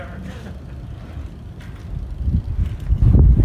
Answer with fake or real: real